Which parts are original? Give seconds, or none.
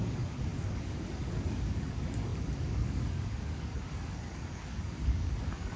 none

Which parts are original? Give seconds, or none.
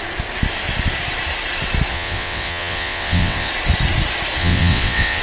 0.0-1.9; 3.5-4.4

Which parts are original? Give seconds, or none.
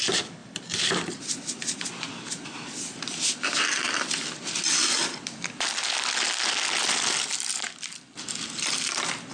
0.0-0.4; 5.6-9.3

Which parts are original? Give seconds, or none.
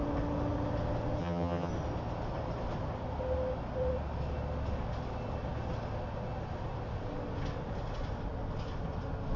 0.0-1.2; 1.7-9.4